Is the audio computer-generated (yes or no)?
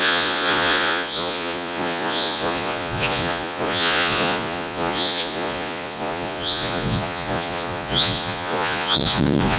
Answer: yes